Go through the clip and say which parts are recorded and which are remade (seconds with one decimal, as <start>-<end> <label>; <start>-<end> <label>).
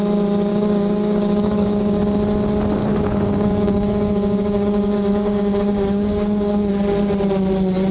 0.0-0.5 recorded; 0.5-2.0 remade; 2.0-2.8 recorded; 2.8-6.7 remade; 6.7-7.9 recorded